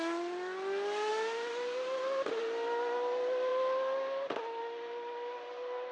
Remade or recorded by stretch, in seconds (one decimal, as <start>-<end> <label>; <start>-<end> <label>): 0.0-5.9 recorded